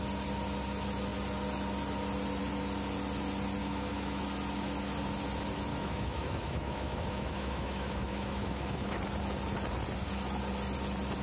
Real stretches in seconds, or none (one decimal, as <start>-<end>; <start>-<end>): 0.0-3.6; 4.2-5.7; 9.0-11.2